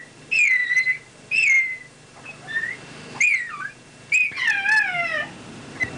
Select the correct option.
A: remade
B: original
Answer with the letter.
B